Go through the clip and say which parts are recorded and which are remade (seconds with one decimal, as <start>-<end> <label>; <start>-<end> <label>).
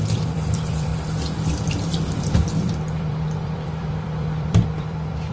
0.0-5.3 remade